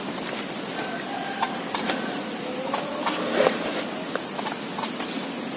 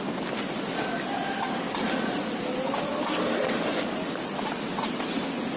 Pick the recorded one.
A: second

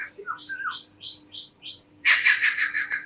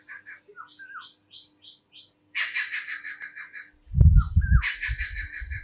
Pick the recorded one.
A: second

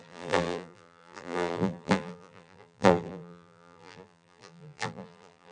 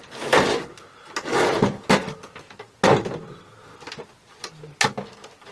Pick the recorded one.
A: second